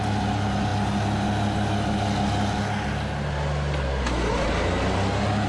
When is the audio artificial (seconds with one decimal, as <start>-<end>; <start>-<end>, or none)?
none